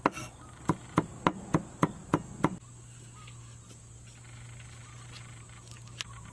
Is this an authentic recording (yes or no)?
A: yes